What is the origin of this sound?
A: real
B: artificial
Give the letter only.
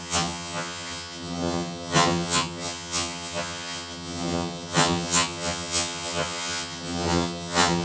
B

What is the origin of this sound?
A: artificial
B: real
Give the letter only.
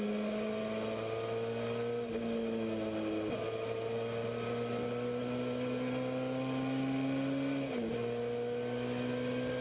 B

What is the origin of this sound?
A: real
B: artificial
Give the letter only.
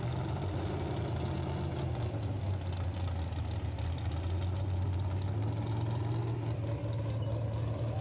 A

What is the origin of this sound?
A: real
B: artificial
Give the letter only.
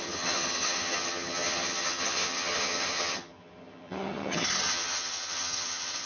B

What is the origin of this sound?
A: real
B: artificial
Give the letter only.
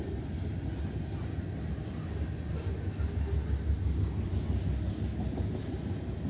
A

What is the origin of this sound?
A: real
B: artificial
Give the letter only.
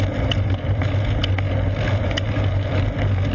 A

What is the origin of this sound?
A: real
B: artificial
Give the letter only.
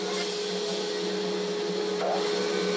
A